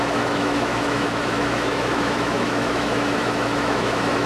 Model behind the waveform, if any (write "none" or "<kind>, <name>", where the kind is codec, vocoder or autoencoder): autoencoder, DAC-VAE